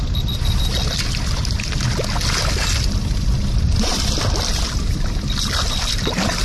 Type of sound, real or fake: real